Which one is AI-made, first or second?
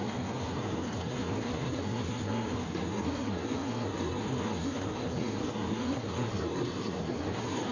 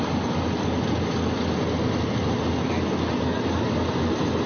first